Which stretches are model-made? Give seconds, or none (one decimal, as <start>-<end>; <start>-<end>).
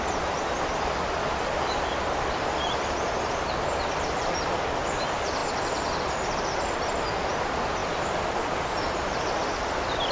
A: none